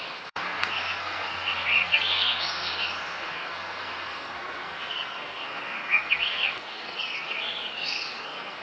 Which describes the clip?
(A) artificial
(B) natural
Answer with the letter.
A